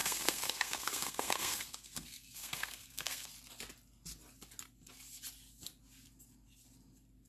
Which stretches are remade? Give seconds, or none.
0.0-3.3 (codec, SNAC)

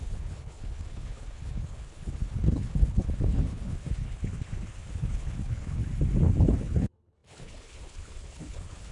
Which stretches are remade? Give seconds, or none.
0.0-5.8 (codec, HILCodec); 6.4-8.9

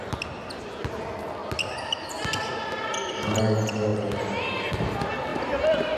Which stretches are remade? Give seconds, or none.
5.3-6.0 (vocoder, BigVGAN v2)

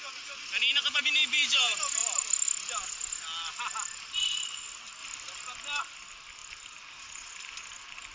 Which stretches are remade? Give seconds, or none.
none

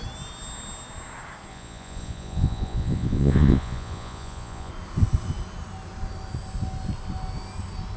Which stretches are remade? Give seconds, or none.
1.5-4.7 (vocoder, Vocos)

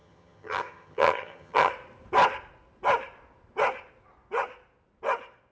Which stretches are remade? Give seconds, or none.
0.0-1.7 (vocoder, HiFi-GAN)